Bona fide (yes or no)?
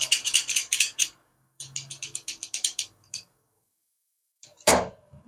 no